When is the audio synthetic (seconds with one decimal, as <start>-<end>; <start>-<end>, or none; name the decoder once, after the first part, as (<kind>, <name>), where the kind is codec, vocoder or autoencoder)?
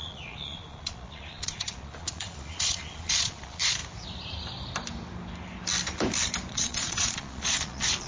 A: 0.0-3.8 (vocoder, Vocos); 6.5-8.1